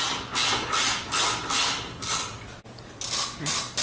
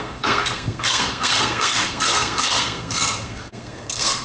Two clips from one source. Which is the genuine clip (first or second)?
first